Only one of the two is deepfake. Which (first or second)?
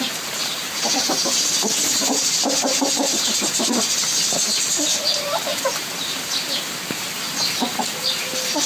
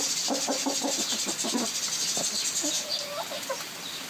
first